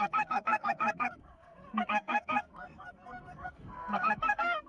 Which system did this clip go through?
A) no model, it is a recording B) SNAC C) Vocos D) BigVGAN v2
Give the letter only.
B